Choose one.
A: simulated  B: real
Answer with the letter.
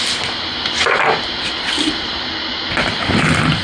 B